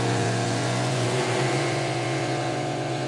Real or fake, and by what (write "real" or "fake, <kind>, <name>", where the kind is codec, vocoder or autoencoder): fake, vocoder, Vocos